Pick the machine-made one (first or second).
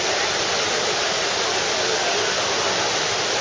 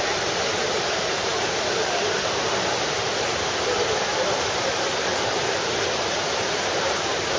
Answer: second